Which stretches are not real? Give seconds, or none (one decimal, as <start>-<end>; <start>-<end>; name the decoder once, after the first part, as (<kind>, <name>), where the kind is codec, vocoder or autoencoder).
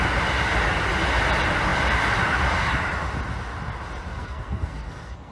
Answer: 4.1-5.3 (codec, SNAC)